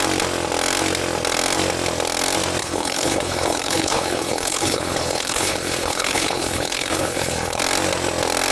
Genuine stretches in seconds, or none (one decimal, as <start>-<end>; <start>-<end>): 0.0-2.6; 7.6-8.5